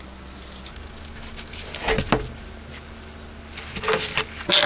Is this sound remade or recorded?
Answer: recorded